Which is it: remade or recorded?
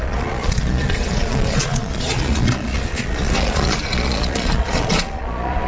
remade